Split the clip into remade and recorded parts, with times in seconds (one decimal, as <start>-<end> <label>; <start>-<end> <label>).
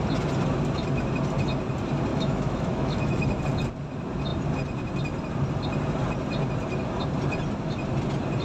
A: 0.0-2.1 recorded; 2.1-3.4 remade; 3.4-8.4 recorded